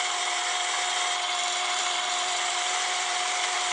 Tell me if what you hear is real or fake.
fake